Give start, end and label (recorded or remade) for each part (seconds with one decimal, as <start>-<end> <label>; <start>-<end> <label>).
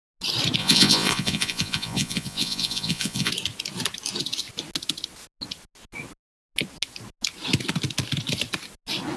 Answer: 0.0-0.6 recorded; 0.6-3.3 remade; 3.3-9.2 recorded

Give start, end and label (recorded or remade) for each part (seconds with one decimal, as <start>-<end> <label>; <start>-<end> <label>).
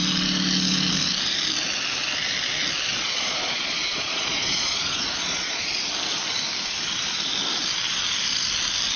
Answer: 0.0-2.9 recorded; 2.9-5.7 remade; 5.7-9.0 recorded